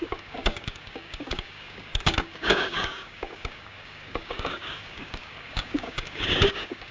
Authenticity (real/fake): fake